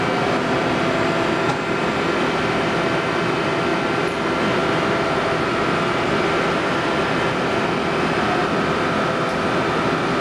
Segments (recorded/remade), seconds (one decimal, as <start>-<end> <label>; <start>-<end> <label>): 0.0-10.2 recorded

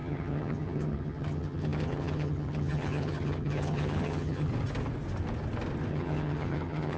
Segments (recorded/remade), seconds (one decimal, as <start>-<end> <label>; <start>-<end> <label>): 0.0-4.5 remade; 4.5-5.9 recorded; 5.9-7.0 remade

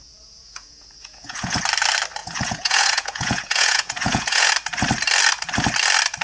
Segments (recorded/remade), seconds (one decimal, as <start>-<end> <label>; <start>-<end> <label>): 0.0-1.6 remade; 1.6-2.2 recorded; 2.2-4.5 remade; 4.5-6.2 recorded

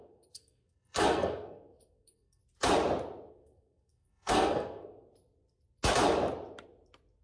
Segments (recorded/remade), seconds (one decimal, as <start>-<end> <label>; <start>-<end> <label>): 0.0-2.4 remade; 2.4-3.3 recorded; 3.3-5.1 remade; 5.1-7.2 recorded

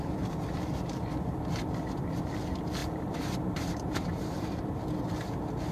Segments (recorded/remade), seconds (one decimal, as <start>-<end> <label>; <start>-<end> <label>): 0.0-2.8 recorded; 2.8-4.6 remade; 4.6-5.7 recorded

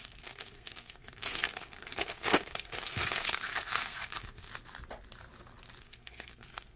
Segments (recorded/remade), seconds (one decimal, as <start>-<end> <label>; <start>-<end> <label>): 0.0-4.5 remade; 4.5-5.8 recorded; 5.8-6.8 remade

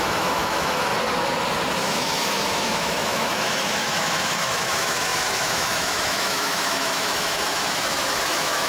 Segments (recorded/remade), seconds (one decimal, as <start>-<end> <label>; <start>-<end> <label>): 0.0-0.9 remade; 0.9-1.8 recorded; 1.8-8.7 remade

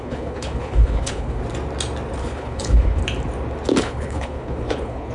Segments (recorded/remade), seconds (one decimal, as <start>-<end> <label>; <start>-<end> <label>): 0.0-1.4 remade; 1.4-2.2 recorded; 2.2-3.0 remade; 3.0-3.8 recorded; 3.8-5.1 remade